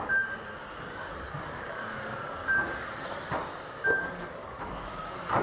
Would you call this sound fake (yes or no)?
no